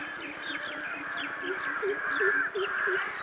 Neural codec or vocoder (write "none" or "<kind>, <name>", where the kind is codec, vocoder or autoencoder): none